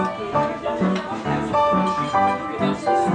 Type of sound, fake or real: real